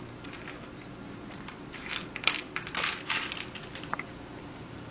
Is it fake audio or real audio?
real